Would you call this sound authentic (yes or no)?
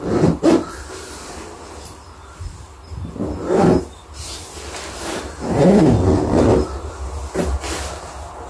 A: yes